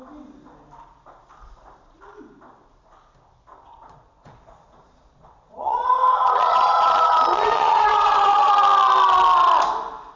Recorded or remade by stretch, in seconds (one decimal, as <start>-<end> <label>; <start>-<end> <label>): 0.0-3.5 recorded; 3.5-8.5 remade; 8.5-10.2 recorded